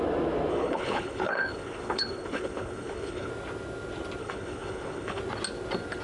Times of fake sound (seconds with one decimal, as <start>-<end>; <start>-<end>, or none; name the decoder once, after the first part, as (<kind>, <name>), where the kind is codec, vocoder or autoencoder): 0.5-3.3 (codec, HILCodec); 4.2-5.2